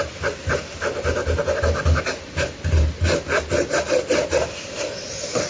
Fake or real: real